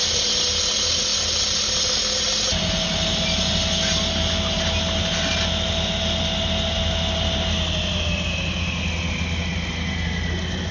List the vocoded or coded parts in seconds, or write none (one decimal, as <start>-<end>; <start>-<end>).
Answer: none